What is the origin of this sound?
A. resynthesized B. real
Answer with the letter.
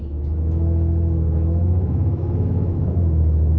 A